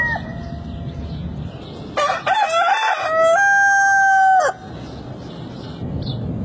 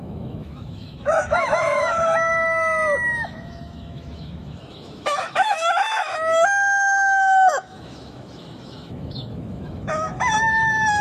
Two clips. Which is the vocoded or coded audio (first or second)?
second